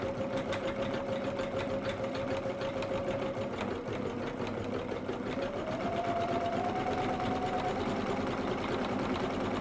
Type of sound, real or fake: real